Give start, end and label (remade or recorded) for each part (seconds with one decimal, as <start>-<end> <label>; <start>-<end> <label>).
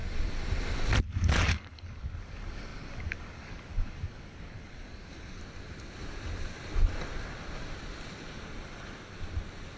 0.0-1.0 recorded; 1.0-5.4 remade; 5.4-9.8 recorded